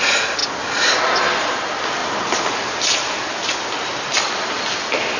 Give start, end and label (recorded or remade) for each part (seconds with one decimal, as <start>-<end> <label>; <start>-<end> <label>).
0.0-5.2 recorded